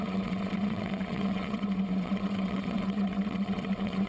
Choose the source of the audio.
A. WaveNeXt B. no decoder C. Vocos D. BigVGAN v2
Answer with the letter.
A